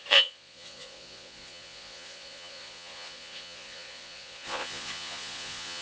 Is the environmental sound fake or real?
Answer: fake